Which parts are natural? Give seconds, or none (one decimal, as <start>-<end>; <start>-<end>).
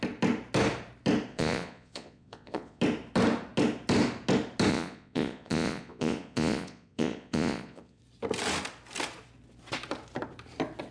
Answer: 0.0-1.3; 2.8-4.7; 8.0-10.9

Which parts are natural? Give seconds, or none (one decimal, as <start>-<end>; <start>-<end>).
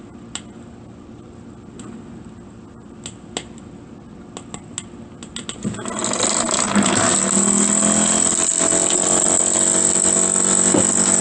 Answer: 0.0-11.2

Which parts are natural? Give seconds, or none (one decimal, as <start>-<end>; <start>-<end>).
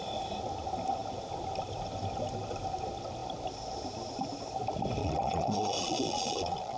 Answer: 0.0-5.0